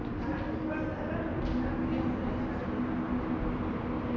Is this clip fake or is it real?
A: real